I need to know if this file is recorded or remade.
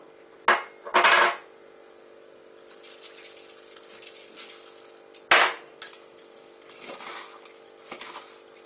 recorded